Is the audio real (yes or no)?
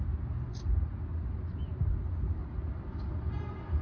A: yes